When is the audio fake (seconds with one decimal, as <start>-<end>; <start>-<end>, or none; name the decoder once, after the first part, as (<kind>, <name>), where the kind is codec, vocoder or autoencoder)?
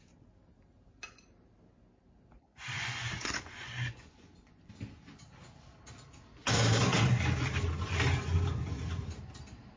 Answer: 2.5-4.7 (vocoder, Vocos)